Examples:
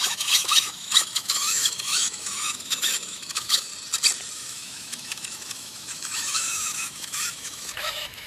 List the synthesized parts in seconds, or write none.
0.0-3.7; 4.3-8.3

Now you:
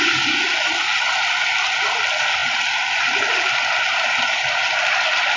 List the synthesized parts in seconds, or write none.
none

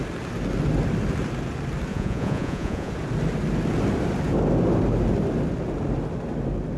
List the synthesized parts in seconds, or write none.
1.9-2.9

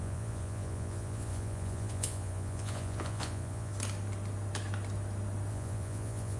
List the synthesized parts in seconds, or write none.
0.0-3.7; 5.5-6.4

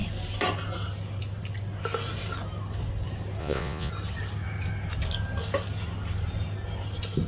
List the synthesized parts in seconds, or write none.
3.4-3.9

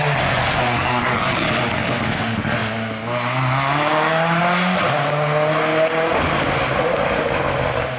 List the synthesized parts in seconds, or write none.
none